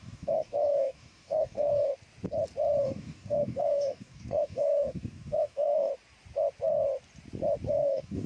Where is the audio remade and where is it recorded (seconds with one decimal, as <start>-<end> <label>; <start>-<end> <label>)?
0.0-1.9 remade; 1.9-2.8 recorded; 2.8-5.9 remade; 5.9-7.7 recorded; 7.7-8.3 remade